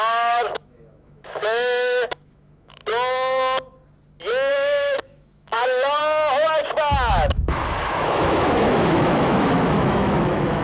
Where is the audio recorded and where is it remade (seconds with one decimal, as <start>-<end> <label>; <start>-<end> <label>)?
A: 0.0-2.8 remade; 2.8-4.5 recorded; 4.5-6.0 remade; 6.0-7.1 recorded; 7.1-10.6 remade